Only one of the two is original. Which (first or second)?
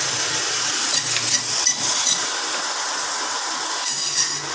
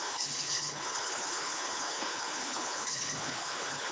first